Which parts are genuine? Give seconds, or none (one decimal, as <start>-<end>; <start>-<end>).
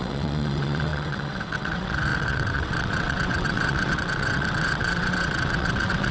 none